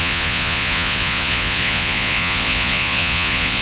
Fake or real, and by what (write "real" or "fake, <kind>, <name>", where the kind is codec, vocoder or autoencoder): fake, vocoder, Vocos